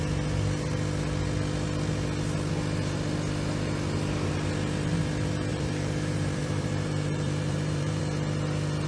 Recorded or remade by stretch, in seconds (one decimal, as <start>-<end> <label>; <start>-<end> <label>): 0.0-5.5 recorded; 5.5-8.0 remade; 8.0-8.9 recorded